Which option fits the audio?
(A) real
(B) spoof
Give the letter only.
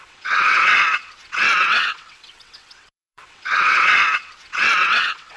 B